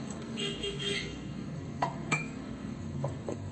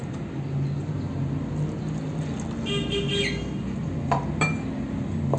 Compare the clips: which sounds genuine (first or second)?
second